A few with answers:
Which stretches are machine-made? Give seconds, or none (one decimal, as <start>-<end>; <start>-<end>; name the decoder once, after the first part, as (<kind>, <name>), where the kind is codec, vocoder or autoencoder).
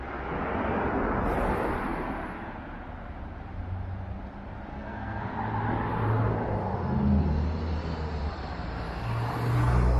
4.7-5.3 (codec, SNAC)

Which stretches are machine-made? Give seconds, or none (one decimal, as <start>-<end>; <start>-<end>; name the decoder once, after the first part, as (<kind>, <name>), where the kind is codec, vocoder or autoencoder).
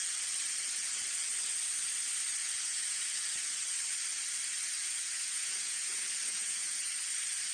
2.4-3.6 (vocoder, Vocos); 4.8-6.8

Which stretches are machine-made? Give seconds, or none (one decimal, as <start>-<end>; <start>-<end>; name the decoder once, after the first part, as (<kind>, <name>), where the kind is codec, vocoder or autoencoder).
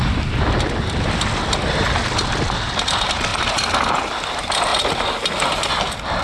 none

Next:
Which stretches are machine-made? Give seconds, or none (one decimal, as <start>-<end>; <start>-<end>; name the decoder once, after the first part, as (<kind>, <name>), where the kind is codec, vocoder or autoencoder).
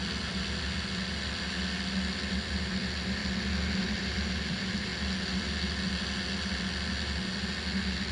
2.3-3.2 (vocoder, BigVGAN v2); 3.8-4.9